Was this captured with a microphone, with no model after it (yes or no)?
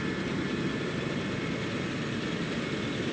no